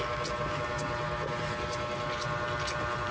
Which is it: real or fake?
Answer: real